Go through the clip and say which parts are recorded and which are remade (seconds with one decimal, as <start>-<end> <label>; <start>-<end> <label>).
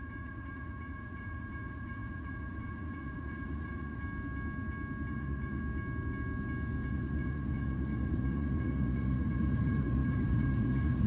0.0-4.0 remade; 4.0-5.1 recorded; 5.1-5.6 remade; 5.6-6.9 recorded; 6.9-11.1 remade